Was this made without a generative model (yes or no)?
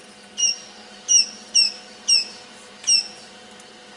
yes